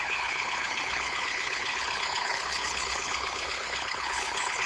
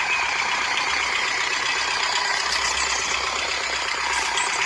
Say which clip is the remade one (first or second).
first